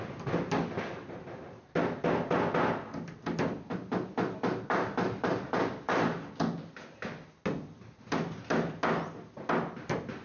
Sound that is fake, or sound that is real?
real